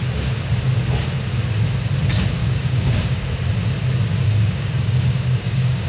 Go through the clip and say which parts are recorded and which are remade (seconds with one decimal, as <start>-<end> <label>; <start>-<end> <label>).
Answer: 0.0-2.4 recorded; 2.4-3.2 remade; 3.2-4.1 recorded; 4.1-5.9 remade